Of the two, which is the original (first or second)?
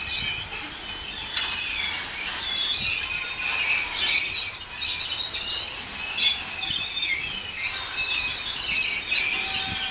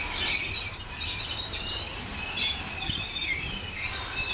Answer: first